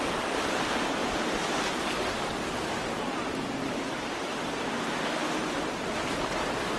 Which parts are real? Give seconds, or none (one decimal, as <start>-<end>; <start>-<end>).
1.0-1.7; 4.2-6.8